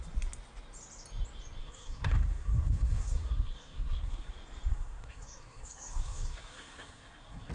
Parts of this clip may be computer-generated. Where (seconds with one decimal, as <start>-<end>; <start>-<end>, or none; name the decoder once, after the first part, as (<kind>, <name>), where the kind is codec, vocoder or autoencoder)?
1.6-4.3 (codec, SNAC); 4.7-7.5